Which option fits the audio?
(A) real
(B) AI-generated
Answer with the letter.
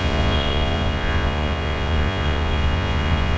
B